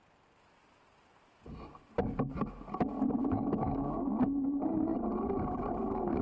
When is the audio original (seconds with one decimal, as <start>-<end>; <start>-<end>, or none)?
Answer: 0.0-3.2; 3.9-6.2

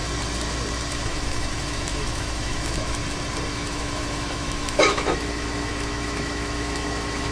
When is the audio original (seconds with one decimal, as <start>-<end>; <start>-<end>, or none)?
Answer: 0.0-0.9; 3.0-3.5

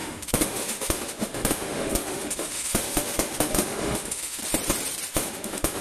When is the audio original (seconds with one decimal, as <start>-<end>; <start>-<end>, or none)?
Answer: 4.4-5.1

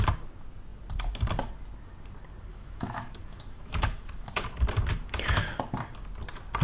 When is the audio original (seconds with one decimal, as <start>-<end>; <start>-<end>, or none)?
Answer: 0.0-2.5; 4.4-6.6

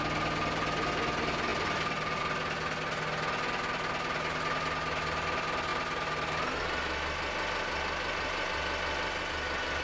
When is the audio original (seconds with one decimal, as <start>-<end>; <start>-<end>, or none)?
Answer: 0.0-9.8

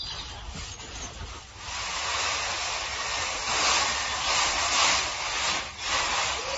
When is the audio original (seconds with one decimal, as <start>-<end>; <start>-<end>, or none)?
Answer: 0.0-6.6